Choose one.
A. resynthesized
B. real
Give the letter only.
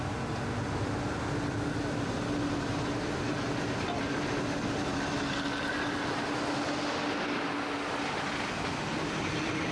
B